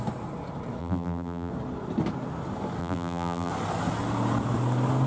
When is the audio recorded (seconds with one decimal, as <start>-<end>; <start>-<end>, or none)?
0.0-0.8; 1.5-2.8; 3.5-5.1